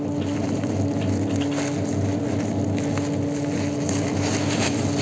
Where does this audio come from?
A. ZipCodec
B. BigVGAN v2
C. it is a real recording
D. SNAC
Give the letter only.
C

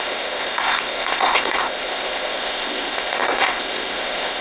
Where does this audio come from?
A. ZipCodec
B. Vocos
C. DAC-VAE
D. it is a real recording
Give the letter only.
A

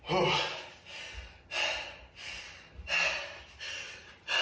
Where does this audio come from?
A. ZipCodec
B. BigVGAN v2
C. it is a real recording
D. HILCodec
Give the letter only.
C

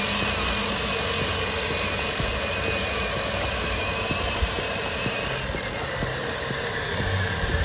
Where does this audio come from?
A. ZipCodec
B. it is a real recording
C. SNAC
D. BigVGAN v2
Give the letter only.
B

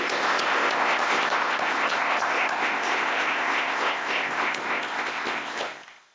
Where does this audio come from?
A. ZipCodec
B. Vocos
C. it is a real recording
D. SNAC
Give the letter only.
A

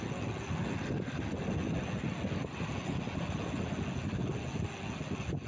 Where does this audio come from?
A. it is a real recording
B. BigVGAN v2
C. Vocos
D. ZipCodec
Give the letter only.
A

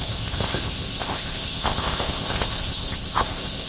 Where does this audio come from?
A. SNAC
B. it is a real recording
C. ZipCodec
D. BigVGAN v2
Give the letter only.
C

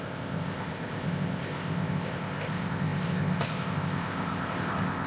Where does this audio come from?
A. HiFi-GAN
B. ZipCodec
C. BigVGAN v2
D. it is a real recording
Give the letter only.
B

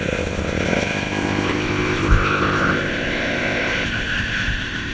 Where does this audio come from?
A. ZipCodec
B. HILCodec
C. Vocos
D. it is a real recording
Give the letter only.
A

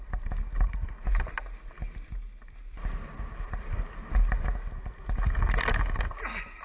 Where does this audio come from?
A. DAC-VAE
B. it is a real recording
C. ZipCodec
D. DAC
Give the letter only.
B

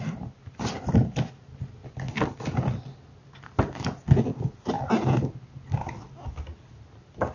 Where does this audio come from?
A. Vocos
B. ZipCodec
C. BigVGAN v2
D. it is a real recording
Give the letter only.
D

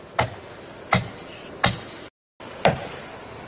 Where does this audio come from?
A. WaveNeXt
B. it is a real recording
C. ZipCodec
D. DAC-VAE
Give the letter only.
B